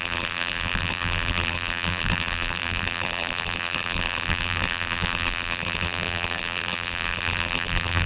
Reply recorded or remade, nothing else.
remade